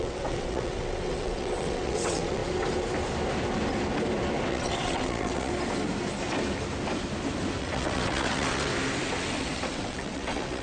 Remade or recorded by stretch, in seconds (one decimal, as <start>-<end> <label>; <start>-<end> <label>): 0.0-2.4 remade; 2.4-4.5 recorded; 4.5-5.5 remade; 5.5-7.6 recorded; 7.6-8.7 remade; 8.7-9.4 recorded; 9.4-10.6 remade